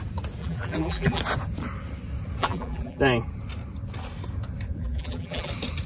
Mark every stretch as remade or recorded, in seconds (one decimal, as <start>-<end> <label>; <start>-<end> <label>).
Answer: 0.0-0.4 recorded; 0.4-1.2 remade; 1.2-2.4 recorded; 2.4-3.0 remade; 3.0-4.8 recorded; 4.8-5.5 remade; 5.5-5.9 recorded